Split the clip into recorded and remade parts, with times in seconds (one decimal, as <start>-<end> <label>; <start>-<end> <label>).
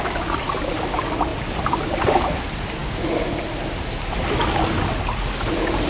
0.0-5.9 recorded